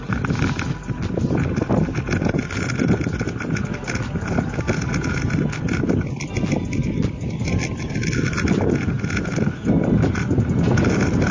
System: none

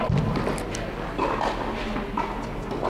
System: none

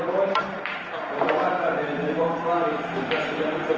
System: vocoder, BigVGAN v2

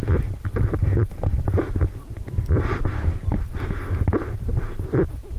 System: none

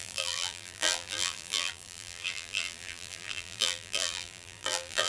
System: vocoder, BigVGAN v2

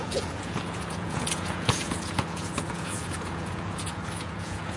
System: vocoder, Vocos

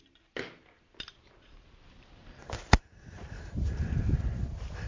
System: none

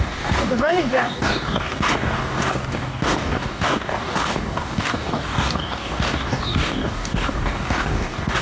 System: codec, DAC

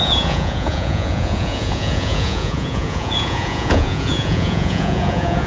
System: vocoder, Vocos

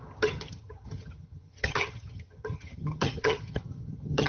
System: vocoder, HiFi-GAN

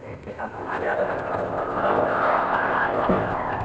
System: codec, ZipCodec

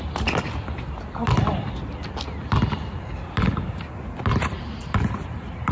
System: none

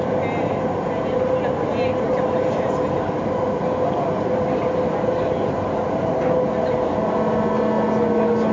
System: none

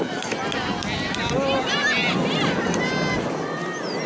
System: none